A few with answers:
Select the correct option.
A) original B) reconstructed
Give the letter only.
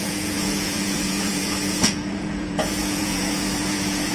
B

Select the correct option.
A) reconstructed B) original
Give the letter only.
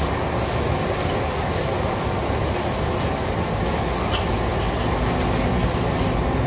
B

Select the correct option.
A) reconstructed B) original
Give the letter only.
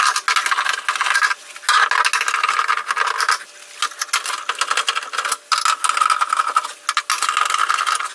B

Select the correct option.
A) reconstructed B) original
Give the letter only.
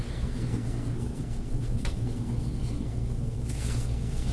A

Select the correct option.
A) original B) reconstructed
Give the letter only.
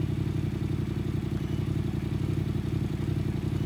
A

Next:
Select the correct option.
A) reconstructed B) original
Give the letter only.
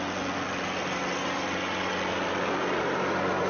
B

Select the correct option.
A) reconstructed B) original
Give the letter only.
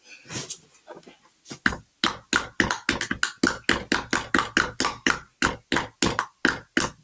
B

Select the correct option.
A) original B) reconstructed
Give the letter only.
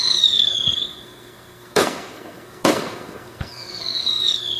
B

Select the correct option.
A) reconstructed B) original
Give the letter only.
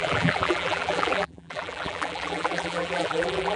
A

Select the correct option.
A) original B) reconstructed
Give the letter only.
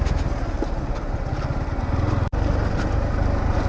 A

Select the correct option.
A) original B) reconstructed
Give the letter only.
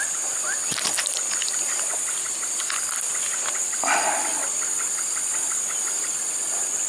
A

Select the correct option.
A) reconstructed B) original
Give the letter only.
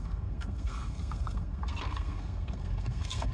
A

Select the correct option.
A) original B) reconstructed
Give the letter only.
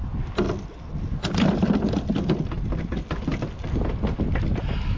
A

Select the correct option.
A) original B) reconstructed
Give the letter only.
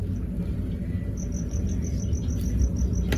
A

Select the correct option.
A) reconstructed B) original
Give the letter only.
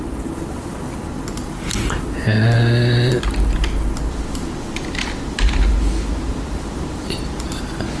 B